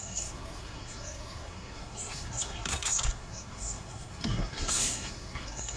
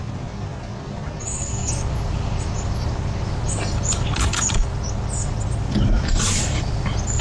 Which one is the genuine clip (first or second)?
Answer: second